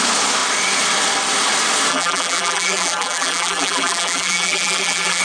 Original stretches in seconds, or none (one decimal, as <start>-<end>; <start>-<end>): 0.0-1.9

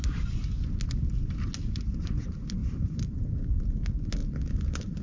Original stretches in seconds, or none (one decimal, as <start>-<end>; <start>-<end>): 0.0-2.6; 3.3-4.2

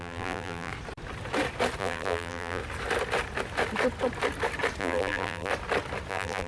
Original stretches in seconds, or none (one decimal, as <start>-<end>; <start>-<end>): 0.7-1.8; 2.6-4.8; 5.5-6.1